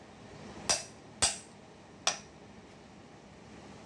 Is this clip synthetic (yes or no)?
no